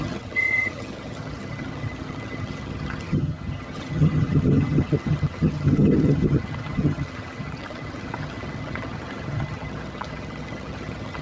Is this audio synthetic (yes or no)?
yes